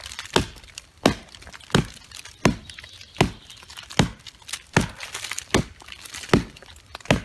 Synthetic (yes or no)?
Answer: no